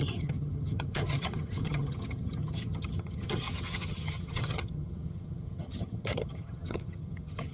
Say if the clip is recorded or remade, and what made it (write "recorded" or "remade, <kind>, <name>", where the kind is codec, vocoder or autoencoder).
remade, vocoder, HiFi-GAN